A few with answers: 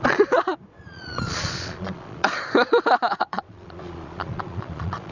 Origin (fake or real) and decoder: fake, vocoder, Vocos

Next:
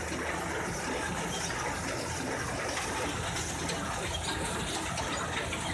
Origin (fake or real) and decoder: real